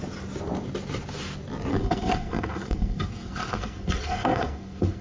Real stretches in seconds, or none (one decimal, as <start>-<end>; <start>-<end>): 0.0-1.7